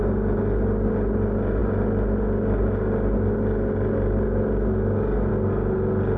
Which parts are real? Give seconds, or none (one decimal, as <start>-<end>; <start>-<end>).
0.0-6.2